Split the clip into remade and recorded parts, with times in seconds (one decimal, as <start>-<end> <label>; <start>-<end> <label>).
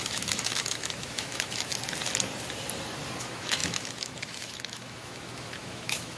0.0-1.7 remade; 1.7-3.2 recorded; 3.2-6.2 remade